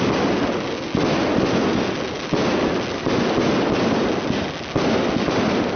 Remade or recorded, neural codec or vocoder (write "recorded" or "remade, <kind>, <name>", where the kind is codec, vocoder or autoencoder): recorded